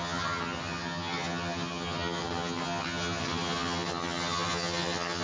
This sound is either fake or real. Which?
fake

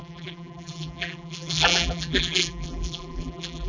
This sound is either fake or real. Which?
fake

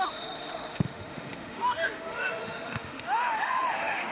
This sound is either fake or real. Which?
fake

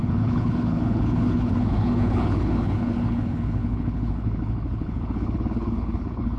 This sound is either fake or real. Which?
fake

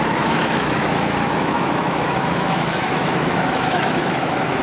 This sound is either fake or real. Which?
fake